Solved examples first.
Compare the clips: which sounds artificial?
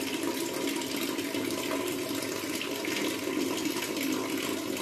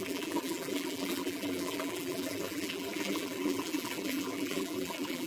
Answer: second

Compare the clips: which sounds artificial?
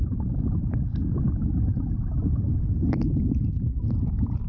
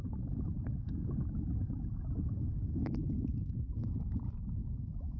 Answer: second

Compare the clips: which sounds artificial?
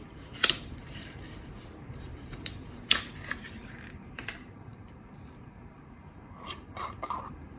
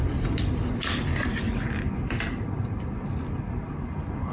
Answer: first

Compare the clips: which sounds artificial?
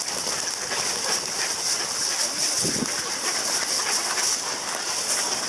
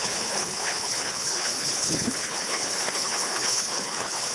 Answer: second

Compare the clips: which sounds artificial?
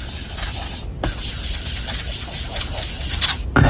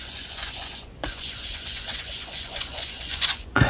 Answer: second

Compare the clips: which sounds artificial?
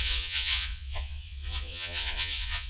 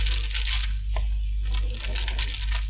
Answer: first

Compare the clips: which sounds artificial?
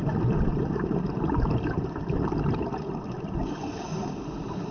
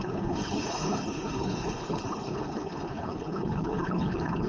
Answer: second